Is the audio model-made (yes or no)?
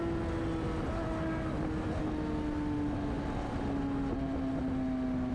no